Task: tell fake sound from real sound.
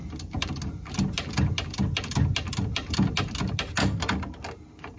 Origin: real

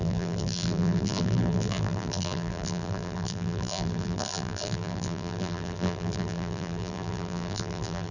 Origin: fake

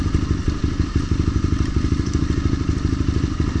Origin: fake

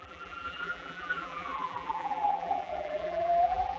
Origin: fake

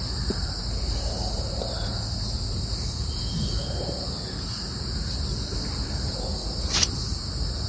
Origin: fake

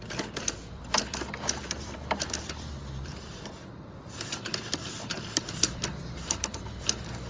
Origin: fake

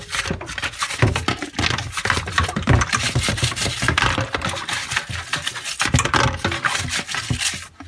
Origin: real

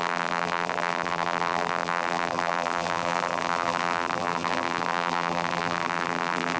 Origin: fake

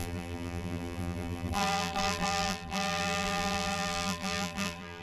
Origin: fake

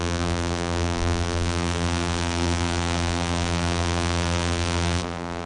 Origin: fake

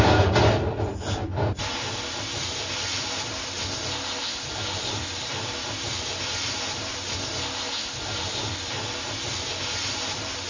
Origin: fake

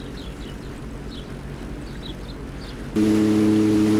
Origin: real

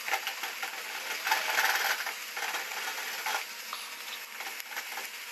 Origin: real